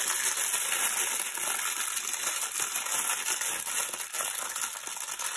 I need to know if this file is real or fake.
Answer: real